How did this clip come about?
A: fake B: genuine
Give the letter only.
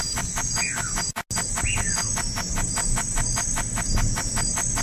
B